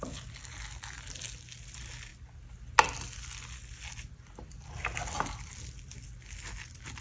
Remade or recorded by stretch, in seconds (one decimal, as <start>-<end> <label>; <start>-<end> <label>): 0.0-7.0 recorded